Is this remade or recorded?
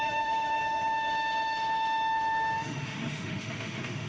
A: remade